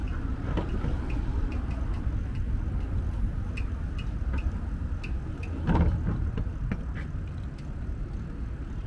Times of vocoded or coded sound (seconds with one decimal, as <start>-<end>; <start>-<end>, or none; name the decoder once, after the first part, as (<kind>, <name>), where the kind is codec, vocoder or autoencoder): none